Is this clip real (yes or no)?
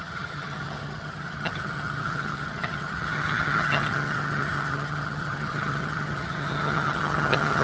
no